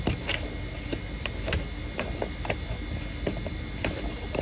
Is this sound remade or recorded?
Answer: recorded